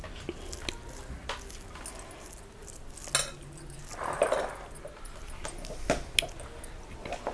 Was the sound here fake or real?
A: real